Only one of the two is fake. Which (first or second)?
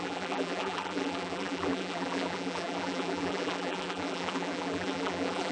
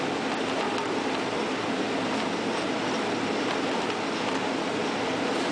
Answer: first